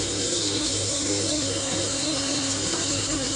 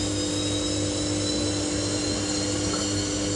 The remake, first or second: first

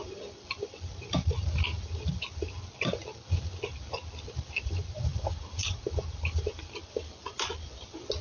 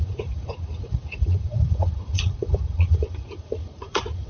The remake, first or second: second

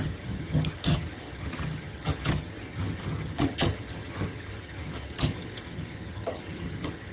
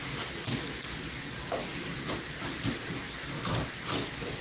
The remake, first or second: first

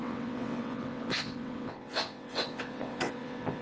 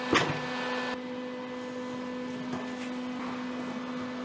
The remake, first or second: first